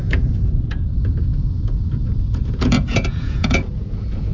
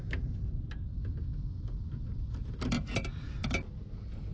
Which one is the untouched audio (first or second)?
second